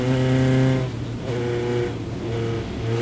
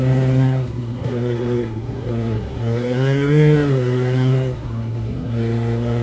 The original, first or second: first